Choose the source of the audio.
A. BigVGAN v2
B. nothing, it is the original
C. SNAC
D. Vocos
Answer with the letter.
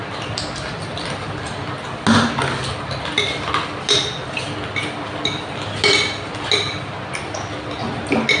B